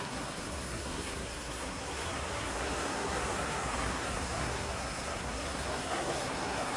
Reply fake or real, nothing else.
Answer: fake